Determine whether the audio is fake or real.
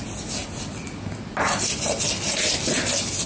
real